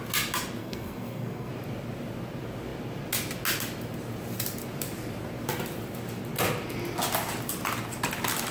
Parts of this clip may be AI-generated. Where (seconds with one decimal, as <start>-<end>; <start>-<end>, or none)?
0.6-1.5